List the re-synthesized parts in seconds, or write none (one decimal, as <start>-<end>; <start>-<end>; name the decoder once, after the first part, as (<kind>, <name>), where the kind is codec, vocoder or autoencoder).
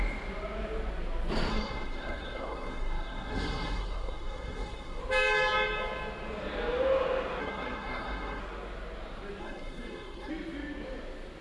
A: 1.5-5.0 (codec, SNAC); 7.4-8.4; 9.4-10.3